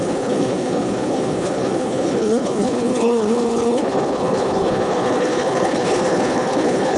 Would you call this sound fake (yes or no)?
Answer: yes